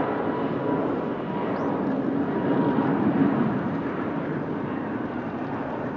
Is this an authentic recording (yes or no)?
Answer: yes